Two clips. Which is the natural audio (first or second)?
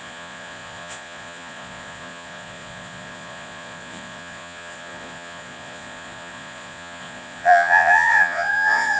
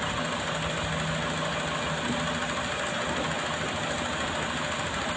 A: second